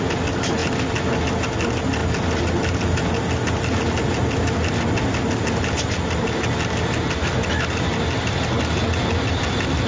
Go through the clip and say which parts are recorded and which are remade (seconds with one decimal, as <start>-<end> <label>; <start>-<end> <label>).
0.0-9.9 recorded